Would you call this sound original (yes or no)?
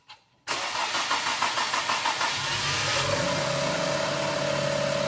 yes